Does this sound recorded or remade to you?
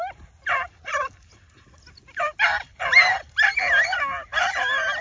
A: recorded